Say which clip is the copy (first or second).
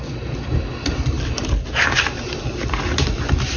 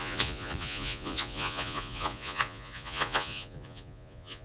second